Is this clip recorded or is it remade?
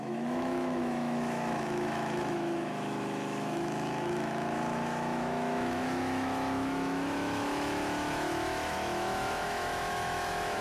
remade